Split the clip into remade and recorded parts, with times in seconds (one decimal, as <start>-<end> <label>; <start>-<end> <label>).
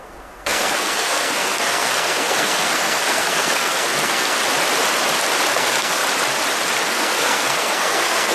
0.0-4.4 remade; 4.4-5.5 recorded; 5.5-6.0 remade; 6.0-6.9 recorded; 6.9-8.3 remade